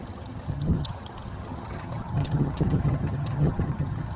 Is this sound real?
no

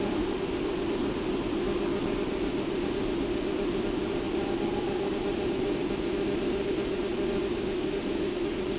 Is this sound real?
yes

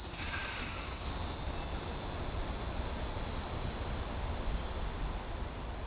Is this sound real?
yes